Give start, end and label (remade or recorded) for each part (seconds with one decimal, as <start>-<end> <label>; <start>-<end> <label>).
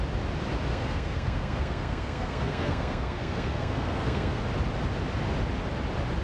0.0-0.7 recorded; 0.7-4.4 remade; 4.4-6.2 recorded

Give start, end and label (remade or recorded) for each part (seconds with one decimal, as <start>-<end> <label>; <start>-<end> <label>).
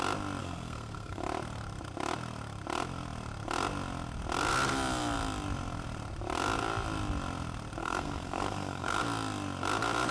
0.0-0.4 recorded; 0.4-1.2 remade; 1.2-7.8 recorded; 7.8-9.0 remade; 9.0-10.1 recorded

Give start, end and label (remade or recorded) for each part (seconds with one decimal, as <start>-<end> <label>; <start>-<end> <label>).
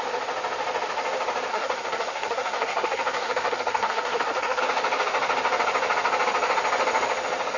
0.0-1.5 recorded; 1.5-4.6 remade; 4.6-7.6 recorded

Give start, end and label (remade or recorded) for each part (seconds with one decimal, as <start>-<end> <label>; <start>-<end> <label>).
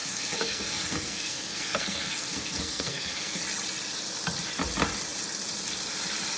0.0-3.4 remade; 3.4-6.4 recorded